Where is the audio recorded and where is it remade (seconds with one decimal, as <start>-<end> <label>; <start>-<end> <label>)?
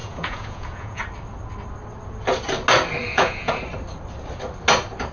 0.0-1.0 remade; 1.0-3.0 recorded; 3.0-3.6 remade; 3.6-5.1 recorded